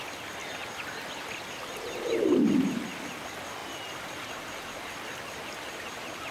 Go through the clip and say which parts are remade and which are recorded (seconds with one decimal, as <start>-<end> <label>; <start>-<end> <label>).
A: 0.0-6.3 recorded